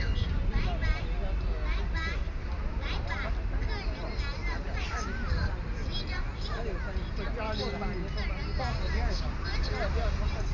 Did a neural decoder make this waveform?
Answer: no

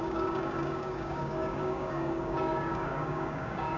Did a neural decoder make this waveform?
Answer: yes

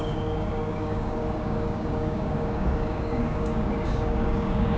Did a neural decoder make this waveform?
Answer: yes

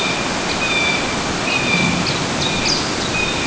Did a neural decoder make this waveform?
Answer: no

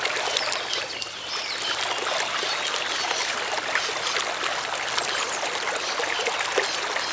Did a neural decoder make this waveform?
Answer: no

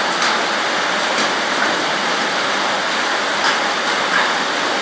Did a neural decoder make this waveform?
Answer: no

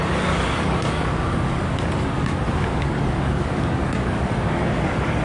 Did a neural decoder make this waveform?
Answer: yes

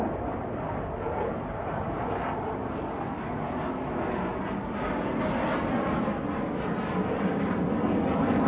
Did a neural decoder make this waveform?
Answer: no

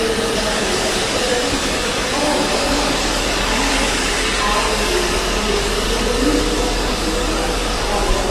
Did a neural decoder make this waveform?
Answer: yes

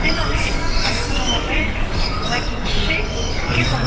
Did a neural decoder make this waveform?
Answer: yes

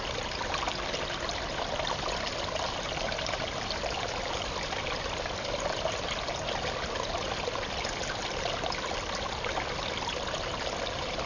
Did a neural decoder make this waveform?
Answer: no